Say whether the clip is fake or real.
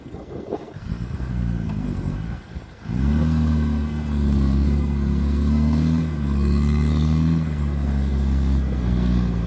fake